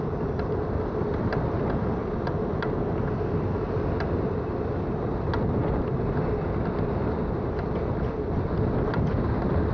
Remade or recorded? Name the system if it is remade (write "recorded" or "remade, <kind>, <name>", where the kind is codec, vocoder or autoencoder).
recorded